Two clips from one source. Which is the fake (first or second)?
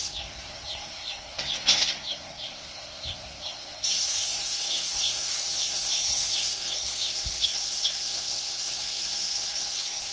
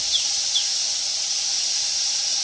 first